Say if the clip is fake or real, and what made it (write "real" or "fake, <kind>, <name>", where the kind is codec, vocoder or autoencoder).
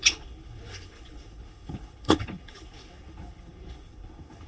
fake, codec, HILCodec